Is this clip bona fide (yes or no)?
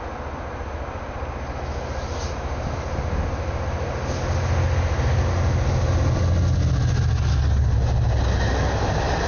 yes